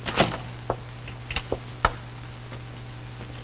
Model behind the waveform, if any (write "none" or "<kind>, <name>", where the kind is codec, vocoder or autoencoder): none